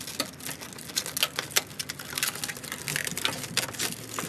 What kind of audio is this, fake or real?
real